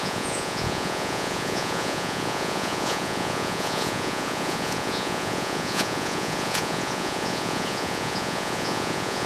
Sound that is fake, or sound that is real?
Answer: fake